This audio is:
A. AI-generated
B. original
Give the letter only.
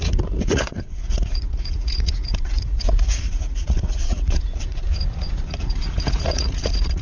A